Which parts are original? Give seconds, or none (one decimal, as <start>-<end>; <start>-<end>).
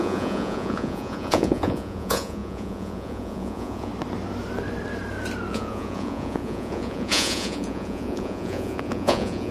3.9-5.5